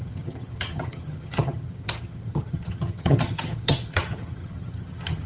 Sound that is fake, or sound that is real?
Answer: fake